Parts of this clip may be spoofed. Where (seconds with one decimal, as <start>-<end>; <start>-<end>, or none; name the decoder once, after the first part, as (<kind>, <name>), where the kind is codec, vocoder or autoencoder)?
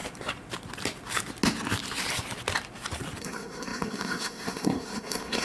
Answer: 3.2-5.4 (codec, SNAC)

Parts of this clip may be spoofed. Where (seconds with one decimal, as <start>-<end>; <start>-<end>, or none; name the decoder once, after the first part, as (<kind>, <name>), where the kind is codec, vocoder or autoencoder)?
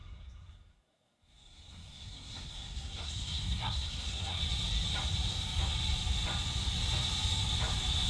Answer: 0.0-4.4 (codec, SNAC)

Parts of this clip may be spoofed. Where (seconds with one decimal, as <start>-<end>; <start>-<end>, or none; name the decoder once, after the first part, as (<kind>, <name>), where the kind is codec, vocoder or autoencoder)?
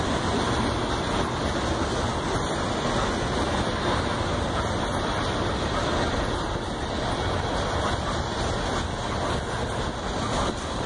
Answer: none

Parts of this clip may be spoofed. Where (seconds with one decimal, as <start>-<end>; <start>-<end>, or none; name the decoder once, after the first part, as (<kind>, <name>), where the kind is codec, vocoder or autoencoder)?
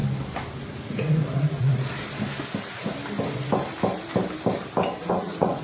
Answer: 0.6-1.7 (vocoder, Vocos); 5.1-5.6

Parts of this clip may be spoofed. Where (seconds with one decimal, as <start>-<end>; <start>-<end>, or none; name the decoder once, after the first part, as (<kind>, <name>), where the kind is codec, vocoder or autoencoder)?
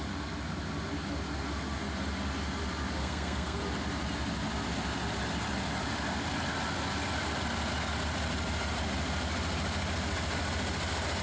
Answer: 3.0-3.6 (codec, SNAC)